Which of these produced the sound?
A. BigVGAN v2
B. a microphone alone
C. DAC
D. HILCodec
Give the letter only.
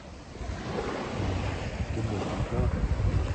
B